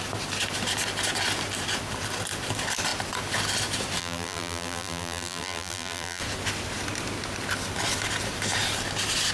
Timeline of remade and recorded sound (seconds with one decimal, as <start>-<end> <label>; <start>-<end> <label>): 0.0-4.0 recorded; 4.0-6.2 remade; 6.2-9.3 recorded